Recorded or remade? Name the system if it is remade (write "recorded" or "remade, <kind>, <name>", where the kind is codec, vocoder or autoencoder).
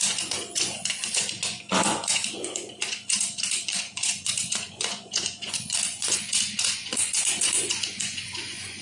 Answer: remade, vocoder, Vocos